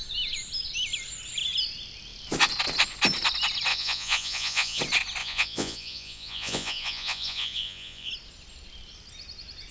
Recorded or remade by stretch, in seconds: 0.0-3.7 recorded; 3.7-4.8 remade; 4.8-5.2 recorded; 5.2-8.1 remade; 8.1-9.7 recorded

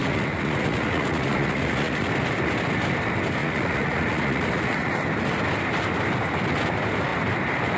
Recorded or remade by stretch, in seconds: 0.0-2.1 remade; 2.1-3.4 recorded; 3.4-4.9 remade; 4.9-7.8 recorded